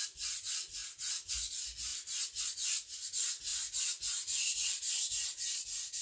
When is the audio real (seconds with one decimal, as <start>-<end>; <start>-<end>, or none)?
0.0-6.0